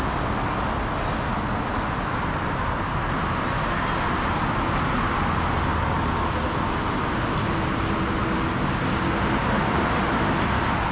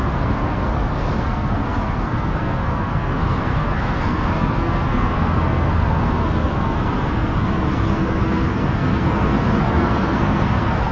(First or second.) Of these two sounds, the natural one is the first